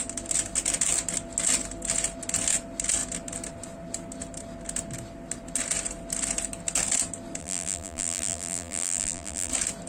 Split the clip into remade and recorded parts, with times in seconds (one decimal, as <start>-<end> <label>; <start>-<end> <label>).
0.0-7.4 recorded; 7.4-9.5 remade; 9.5-9.9 recorded